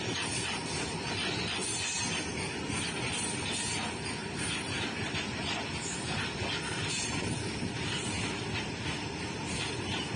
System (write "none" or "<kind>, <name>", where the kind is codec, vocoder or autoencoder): none